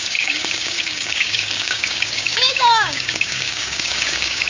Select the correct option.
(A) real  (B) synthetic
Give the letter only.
B